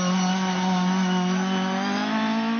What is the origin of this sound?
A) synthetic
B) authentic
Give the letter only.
B